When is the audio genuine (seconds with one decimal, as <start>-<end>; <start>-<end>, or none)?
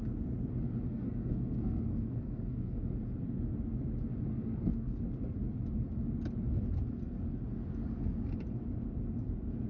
0.0-0.9; 2.8-4.3; 5.0-9.7